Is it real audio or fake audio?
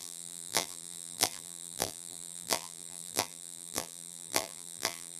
fake